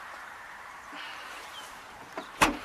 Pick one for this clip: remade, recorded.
remade